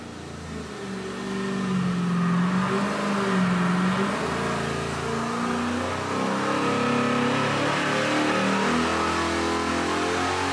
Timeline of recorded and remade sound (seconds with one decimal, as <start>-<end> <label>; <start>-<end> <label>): 0.0-10.5 recorded